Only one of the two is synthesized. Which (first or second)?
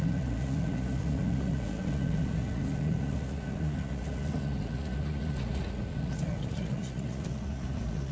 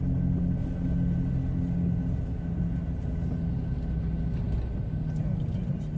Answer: first